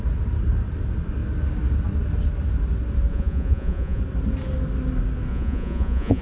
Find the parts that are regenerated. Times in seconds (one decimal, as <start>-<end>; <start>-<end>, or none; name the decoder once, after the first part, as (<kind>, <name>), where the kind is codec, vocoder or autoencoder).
3.1-4.0 (vocoder, Vocos); 5.3-6.2